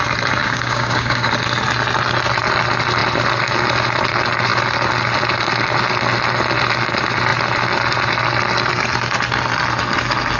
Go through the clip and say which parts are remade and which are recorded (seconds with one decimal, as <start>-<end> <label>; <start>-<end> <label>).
0.0-0.4 recorded; 0.4-1.3 remade; 1.3-10.4 recorded